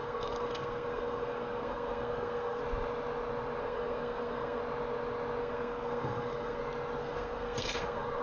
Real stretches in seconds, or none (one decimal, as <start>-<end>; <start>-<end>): 2.6-3.6; 4.6-5.4; 6.6-7.0